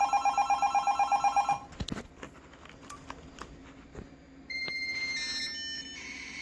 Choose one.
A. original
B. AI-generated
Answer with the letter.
A